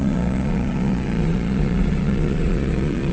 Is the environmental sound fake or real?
fake